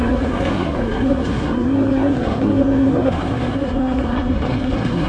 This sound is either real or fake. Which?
fake